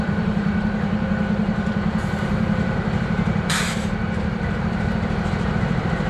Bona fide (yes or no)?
no